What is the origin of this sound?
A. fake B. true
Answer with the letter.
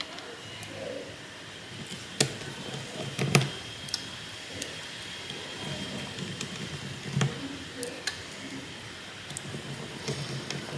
B